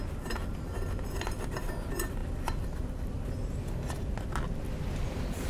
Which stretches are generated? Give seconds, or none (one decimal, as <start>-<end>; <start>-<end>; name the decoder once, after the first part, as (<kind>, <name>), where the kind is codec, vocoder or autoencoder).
none

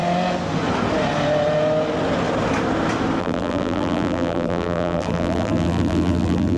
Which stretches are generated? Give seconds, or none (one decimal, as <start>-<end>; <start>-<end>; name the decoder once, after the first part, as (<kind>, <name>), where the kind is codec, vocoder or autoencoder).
3.2-6.6 (vocoder, BigVGAN v2)

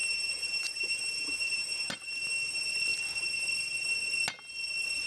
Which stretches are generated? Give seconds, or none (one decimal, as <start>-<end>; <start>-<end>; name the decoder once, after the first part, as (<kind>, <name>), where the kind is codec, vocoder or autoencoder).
0.0-2.4 (vocoder, BigVGAN v2)

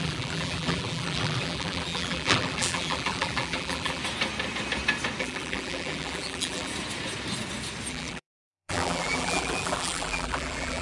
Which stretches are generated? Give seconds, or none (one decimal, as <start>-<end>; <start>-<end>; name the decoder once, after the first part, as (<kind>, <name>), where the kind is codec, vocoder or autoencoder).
0.0-4.0 (vocoder, BigVGAN v2); 5.2-6.7; 7.9-10.8

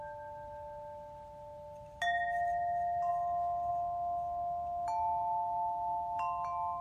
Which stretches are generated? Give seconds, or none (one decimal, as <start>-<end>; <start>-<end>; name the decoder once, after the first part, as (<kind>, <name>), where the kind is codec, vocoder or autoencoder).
none

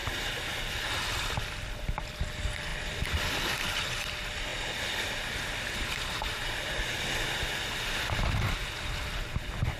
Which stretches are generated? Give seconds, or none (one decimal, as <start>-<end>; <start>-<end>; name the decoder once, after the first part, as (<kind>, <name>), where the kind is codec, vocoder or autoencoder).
0.7-8.6 (vocoder, BigVGAN v2); 9.1-9.8